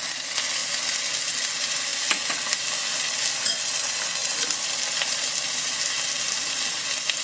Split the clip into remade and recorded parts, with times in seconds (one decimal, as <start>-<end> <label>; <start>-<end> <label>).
0.0-7.2 recorded